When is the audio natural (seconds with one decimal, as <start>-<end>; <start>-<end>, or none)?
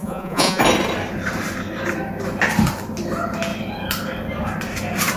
0.6-5.2